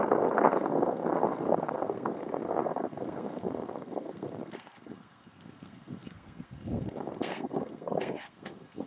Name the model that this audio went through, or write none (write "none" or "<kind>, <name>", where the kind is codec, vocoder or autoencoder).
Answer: codec, SNAC